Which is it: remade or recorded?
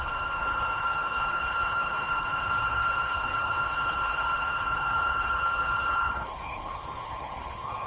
remade